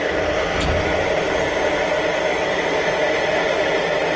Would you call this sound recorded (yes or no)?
yes